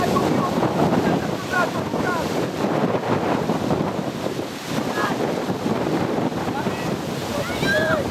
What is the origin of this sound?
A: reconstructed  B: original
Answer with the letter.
A